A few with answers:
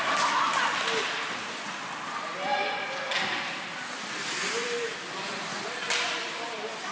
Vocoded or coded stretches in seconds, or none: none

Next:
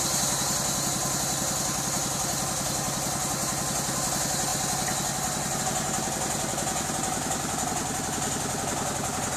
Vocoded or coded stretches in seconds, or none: none

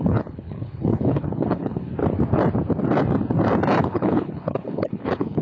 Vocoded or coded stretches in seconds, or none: 0.0-2.0 (codec, HILCodec); 3.8-5.4

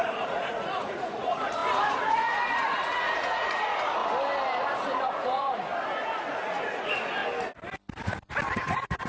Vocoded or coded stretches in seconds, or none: 0.0-4.0 (vocoder, Vocos); 4.6-5.6; 6.3-7.2; 8.5-9.1